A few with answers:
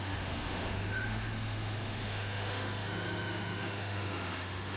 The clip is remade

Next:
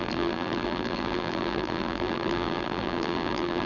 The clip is remade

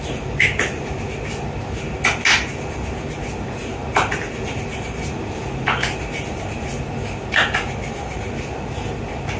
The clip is recorded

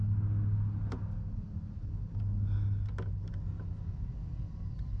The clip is recorded